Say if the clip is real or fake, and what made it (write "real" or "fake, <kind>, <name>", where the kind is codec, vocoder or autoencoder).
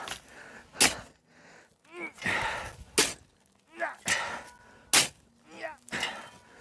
real